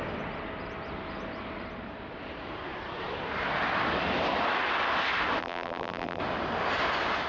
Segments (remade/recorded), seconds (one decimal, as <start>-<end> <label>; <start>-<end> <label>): 0.0-5.4 recorded; 5.4-6.2 remade; 6.2-7.3 recorded